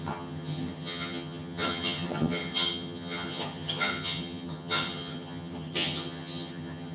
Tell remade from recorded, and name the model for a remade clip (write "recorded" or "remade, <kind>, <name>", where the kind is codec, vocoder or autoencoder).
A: remade, vocoder, HiFi-GAN